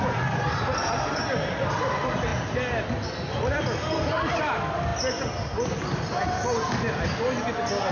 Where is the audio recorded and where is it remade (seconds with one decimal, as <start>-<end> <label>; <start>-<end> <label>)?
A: 0.0-7.9 recorded